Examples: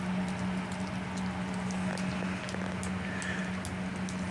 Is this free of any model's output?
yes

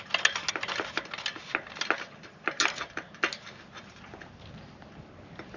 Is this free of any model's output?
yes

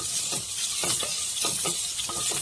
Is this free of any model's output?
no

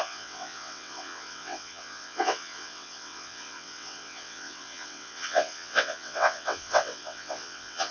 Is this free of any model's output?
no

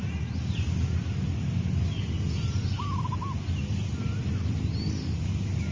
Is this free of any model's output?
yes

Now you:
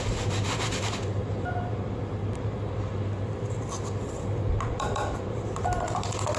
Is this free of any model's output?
yes